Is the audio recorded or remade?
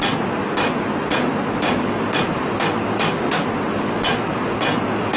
recorded